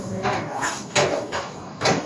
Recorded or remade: remade